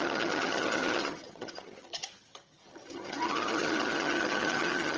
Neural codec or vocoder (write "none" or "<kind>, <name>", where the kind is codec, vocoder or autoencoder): vocoder, HiFi-GAN